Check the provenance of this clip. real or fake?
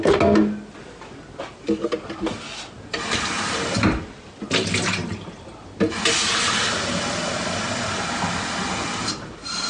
real